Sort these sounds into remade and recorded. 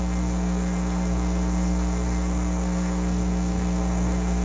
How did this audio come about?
remade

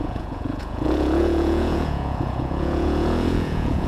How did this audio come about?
remade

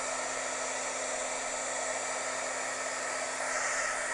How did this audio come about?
recorded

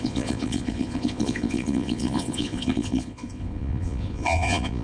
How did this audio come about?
remade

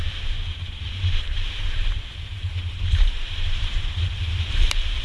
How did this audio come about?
remade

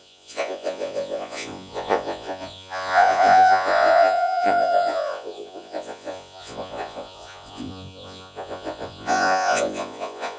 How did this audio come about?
remade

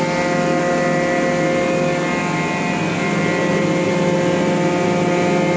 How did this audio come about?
recorded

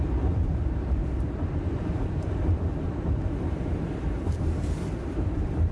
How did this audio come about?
remade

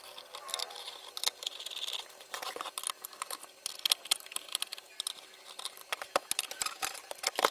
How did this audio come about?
recorded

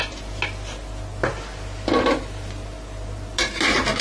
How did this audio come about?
recorded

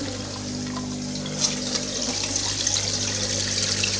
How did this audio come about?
recorded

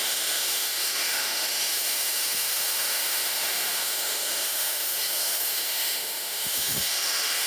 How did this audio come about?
remade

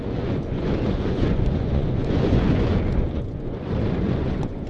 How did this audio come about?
remade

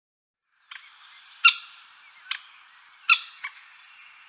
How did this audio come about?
recorded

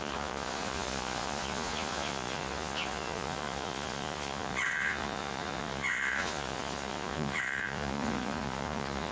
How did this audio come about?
remade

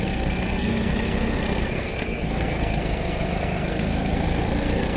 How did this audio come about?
remade